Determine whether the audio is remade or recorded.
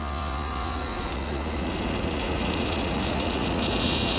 remade